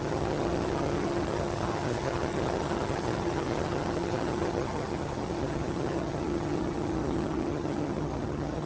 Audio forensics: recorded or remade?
remade